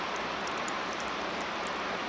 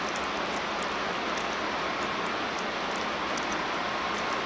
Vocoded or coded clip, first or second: first